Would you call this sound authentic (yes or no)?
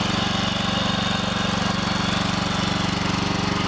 yes